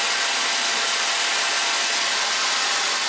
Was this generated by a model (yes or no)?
no